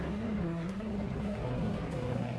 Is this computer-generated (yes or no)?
yes